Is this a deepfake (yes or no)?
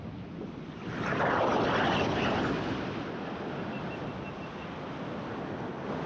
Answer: no